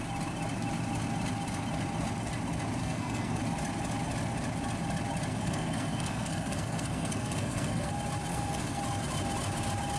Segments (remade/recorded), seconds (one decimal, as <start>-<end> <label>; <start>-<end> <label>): 0.0-2.8 recorded; 2.8-3.4 remade; 3.4-5.3 recorded; 5.3-7.9 remade; 7.9-8.3 recorded; 8.3-8.8 remade; 8.8-10.0 recorded